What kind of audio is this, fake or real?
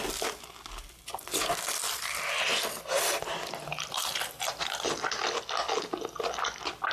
real